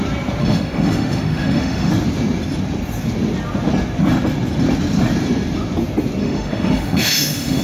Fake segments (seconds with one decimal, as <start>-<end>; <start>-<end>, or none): 0.4-1.9; 6.2-7.6